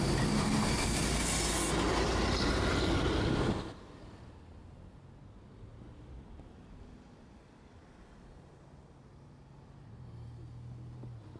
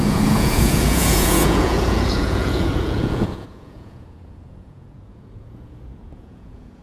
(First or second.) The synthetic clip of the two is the second